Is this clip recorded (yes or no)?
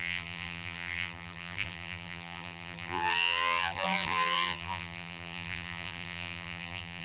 no